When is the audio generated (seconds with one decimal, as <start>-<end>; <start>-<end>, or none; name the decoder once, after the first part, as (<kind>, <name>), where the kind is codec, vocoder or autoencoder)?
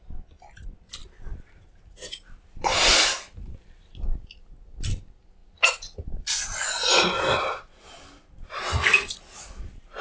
none